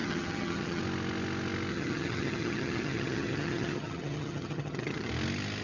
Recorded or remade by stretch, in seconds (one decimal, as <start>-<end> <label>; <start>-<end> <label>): 0.0-0.8 remade; 0.8-1.7 recorded; 1.7-5.1 remade; 5.1-5.6 recorded